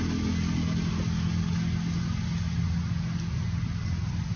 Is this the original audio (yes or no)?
yes